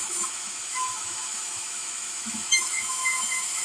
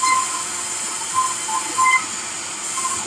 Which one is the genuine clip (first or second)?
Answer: second